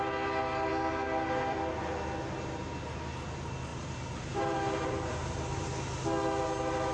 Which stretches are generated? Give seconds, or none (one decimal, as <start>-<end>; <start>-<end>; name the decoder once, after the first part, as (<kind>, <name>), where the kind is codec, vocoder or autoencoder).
3.7-5.7 (vocoder, BigVGAN v2)